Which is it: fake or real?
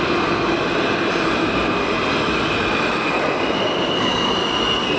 real